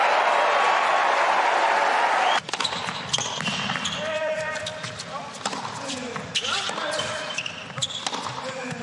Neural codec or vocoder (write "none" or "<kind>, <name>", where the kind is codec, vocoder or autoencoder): none